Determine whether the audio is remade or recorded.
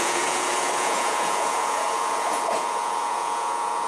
remade